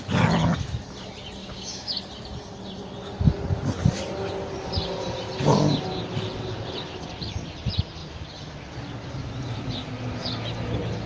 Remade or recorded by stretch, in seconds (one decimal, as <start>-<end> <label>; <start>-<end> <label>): 0.0-1.4 recorded; 1.4-2.0 remade; 2.0-11.1 recorded